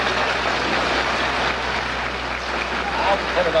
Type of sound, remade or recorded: recorded